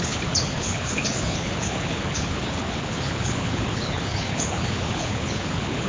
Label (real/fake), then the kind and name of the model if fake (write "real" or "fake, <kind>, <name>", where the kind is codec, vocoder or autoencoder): fake, codec, HILCodec